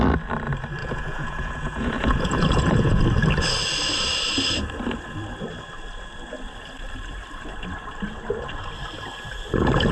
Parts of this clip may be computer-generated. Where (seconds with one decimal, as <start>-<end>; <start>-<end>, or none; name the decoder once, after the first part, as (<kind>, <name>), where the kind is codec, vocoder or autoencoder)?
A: 0.8-3.0 (vocoder, Vocos)